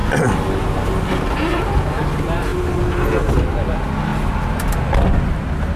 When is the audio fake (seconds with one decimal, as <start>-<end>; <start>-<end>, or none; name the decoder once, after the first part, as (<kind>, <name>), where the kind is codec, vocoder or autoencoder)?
none